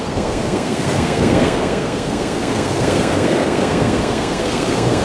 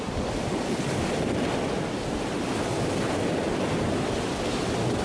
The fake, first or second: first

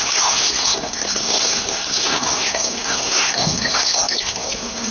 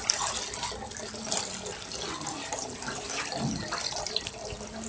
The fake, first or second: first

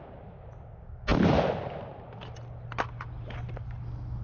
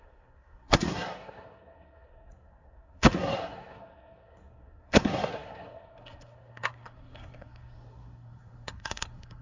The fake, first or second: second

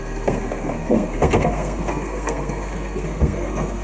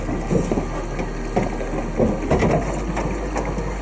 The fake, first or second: first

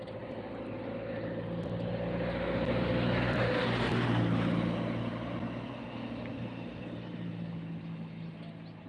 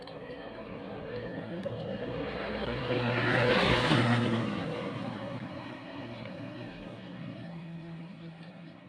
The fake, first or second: second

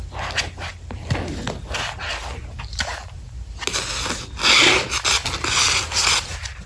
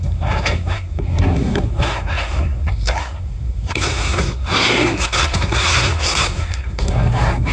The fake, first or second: second